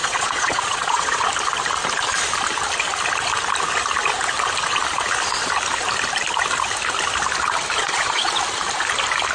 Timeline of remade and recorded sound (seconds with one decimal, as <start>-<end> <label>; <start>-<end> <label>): 0.0-1.3 remade; 1.3-7.8 recorded; 7.8-8.3 remade; 8.3-9.3 recorded